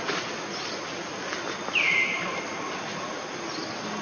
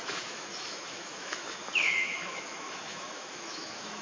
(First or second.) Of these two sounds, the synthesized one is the second